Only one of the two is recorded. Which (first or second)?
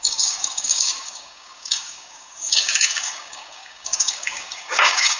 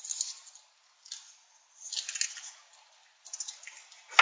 second